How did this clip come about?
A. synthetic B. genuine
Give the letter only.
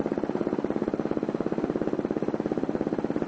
B